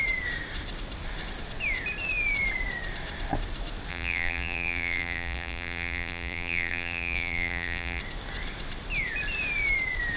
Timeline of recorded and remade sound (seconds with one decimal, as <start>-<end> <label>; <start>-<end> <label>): 0.0-3.9 recorded; 3.9-8.0 remade; 8.0-10.2 recorded